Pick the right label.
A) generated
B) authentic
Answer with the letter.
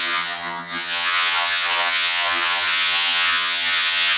A